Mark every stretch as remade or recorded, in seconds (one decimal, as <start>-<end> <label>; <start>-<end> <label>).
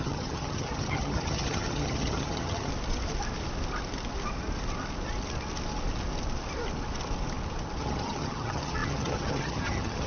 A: 0.0-2.7 remade; 2.7-7.8 recorded; 7.8-10.1 remade